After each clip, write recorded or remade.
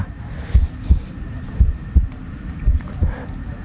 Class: remade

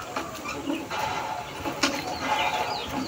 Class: recorded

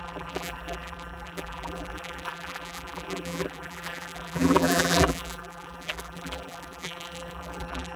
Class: remade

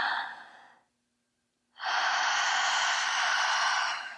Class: recorded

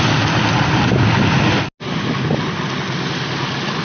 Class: recorded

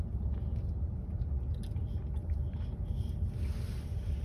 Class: recorded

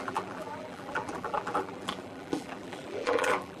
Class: remade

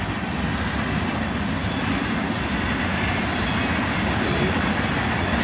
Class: recorded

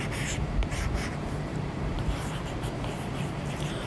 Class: remade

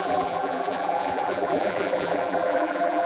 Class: remade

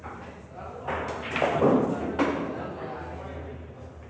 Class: recorded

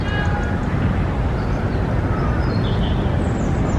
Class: recorded